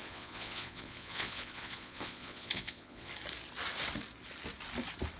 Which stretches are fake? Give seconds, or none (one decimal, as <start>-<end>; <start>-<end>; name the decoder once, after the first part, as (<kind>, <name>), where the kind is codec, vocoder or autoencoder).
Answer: 0.0-3.1 (vocoder, Vocos)